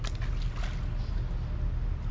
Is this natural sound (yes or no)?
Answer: yes